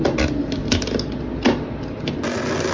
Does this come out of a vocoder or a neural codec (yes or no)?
no